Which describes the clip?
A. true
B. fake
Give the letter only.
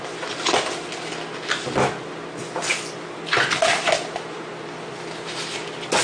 A